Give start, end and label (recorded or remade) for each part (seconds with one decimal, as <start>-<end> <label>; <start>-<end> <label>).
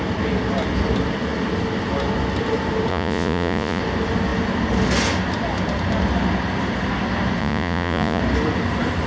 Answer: 0.0-2.9 recorded; 2.9-3.8 remade; 3.8-7.4 recorded; 7.4-8.2 remade; 8.2-9.1 recorded